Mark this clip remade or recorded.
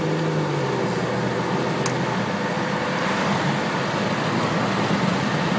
recorded